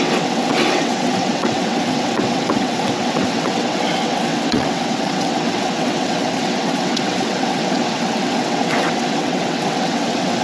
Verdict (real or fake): fake